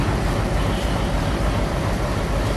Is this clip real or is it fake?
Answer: fake